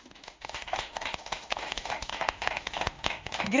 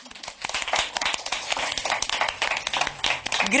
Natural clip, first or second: second